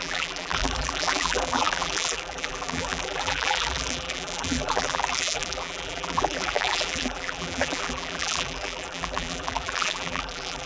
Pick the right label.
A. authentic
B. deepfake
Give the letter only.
B